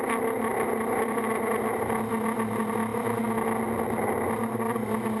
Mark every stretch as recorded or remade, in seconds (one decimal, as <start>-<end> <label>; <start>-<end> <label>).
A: 0.0-0.5 recorded; 0.5-1.2 remade; 1.2-5.2 recorded